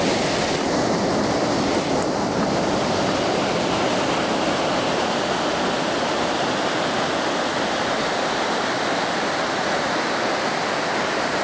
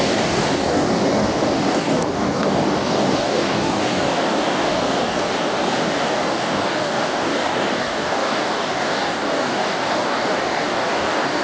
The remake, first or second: second